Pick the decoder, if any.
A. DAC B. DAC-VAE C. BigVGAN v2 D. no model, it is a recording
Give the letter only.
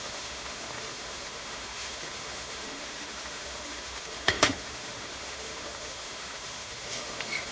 B